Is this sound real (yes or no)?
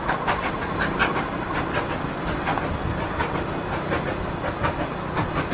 yes